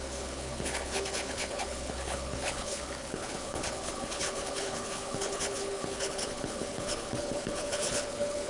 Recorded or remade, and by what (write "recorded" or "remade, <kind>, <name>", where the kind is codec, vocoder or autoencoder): remade, codec, HILCodec